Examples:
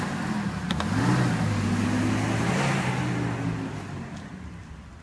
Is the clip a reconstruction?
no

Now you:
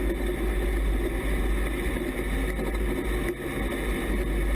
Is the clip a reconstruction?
no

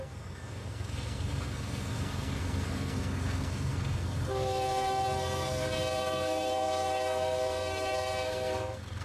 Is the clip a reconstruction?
yes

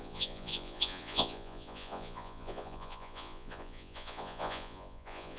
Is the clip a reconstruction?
yes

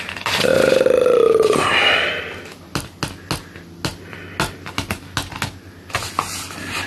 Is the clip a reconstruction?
no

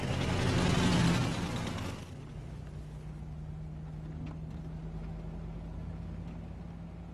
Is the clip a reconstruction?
no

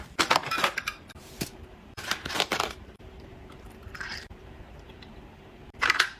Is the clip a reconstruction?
yes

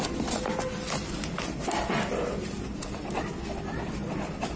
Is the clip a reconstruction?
no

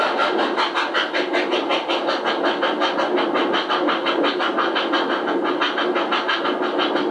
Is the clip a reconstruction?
no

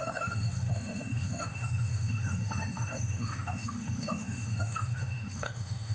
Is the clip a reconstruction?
yes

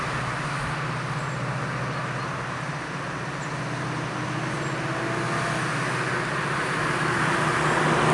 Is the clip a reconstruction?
no